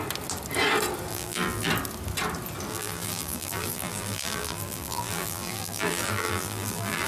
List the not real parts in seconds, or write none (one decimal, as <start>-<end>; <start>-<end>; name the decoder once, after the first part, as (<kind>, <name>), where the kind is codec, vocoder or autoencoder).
1.1-1.7 (vocoder, BigVGAN v2); 2.7-7.1

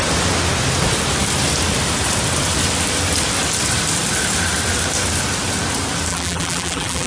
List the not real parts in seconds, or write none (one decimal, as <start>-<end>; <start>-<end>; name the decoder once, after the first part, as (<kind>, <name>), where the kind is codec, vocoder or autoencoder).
6.1-7.1 (vocoder, BigVGAN v2)

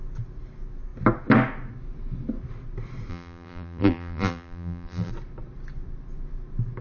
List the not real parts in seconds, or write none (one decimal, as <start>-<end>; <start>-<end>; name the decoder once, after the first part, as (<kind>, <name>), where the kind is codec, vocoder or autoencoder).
3.1-5.1 (vocoder, BigVGAN v2)

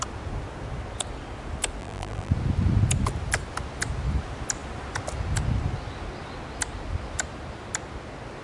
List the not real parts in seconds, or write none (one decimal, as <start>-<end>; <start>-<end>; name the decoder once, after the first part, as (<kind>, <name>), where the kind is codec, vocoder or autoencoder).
1.8-2.3 (vocoder, BigVGAN v2)